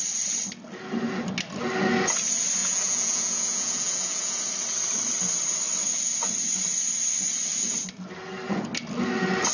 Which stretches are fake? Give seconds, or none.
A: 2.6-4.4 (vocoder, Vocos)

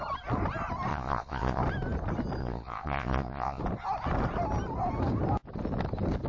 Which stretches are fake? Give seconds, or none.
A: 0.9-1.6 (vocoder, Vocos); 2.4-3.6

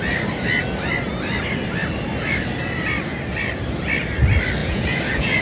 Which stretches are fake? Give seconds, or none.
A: 4.6-5.4 (vocoder, Vocos)

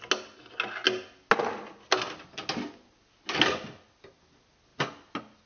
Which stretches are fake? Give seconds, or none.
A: none

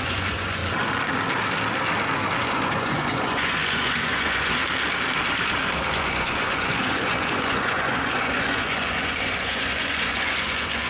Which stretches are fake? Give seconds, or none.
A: 0.0-0.6 (vocoder, Vocos); 2.4-4.6; 5.9-10.9

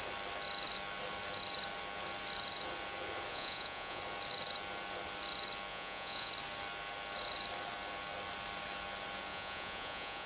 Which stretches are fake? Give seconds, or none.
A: 3.3-4.0 (vocoder, Vocos); 5.7-6.3; 9.3-10.3

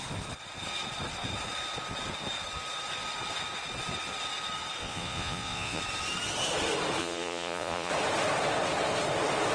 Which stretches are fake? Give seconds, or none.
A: 4.8-5.8 (vocoder, Vocos); 7.0-7.9